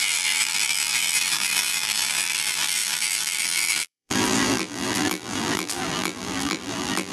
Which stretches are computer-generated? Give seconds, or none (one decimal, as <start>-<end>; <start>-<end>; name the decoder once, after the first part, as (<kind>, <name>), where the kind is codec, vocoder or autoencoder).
0.0-7.1 (vocoder, BigVGAN v2)